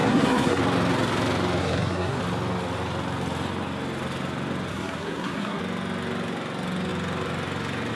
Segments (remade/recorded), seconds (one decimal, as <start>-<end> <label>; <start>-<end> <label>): 0.0-0.6 remade; 0.6-1.6 recorded; 1.6-2.2 remade; 2.2-4.7 recorded; 4.7-5.6 remade; 5.6-7.9 recorded